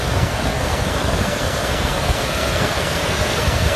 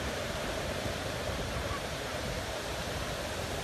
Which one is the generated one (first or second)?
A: first